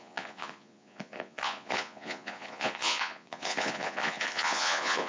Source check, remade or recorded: remade